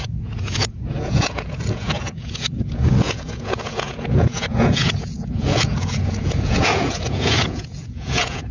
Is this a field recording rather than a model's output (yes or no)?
no